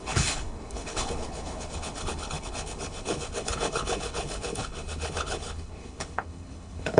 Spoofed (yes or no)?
yes